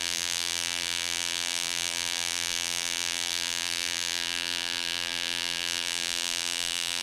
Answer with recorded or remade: remade